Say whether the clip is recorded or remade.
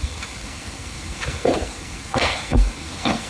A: remade